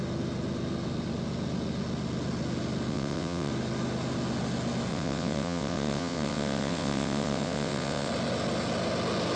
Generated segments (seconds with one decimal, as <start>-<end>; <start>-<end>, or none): 2.9-3.5; 4.9-8.1